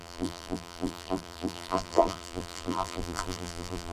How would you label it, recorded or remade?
remade